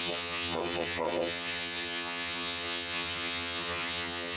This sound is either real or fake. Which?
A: fake